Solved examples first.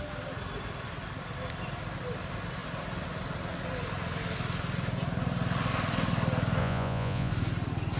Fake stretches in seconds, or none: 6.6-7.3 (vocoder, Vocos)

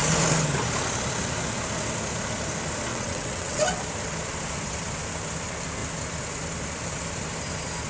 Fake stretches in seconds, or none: 2.9-3.8 (vocoder, WaveNeXt)

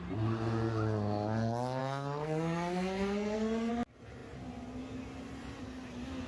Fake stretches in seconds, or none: 1.8-3.7 (codec, SNAC)

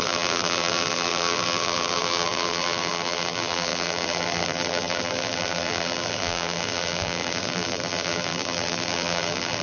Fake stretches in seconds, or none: 0.0-9.6 (vocoder, BigVGAN v2)

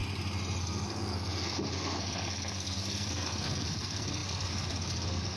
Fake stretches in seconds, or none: 0.6-5.4 (codec, SNAC)

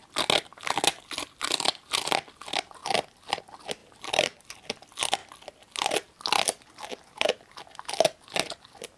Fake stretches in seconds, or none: 3.8-4.4 (vocoder, BigVGAN v2)

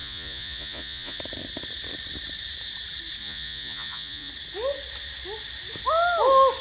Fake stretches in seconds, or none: 0.0-1.2 (vocoder, Vocos); 3.2-4.3